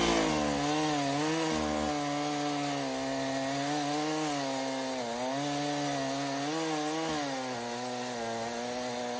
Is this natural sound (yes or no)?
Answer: yes